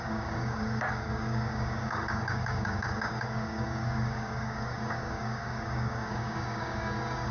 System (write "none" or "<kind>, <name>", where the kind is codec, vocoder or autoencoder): codec, DAC